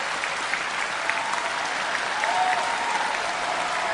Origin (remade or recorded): recorded